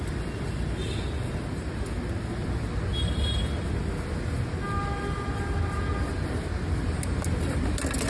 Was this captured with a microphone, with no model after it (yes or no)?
yes